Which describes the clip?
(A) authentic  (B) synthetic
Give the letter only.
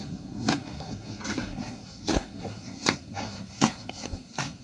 B